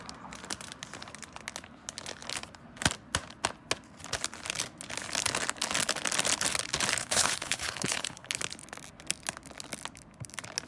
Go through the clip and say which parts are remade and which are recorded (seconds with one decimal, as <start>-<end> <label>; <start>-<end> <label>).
0.0-7.0 recorded; 7.0-8.3 remade; 8.3-10.7 recorded